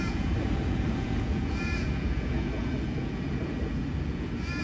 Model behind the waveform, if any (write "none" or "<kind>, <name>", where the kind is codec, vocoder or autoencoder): vocoder, Vocos